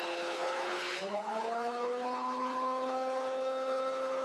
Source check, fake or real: fake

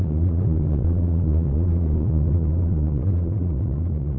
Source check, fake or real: fake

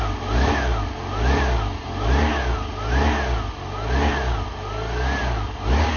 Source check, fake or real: real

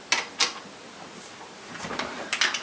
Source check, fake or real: real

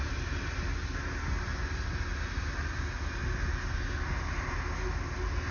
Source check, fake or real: real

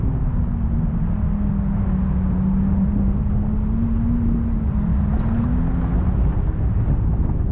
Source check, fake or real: real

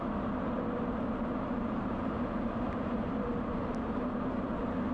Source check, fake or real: fake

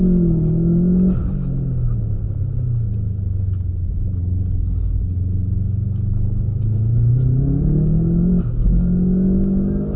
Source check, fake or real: real